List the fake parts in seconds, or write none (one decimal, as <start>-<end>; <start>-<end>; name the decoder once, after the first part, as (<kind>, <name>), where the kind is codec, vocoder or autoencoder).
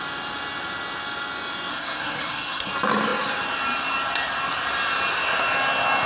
1.7-2.7 (codec, SNAC)